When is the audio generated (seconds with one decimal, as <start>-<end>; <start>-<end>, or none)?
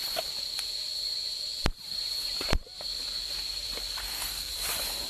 4.0-4.5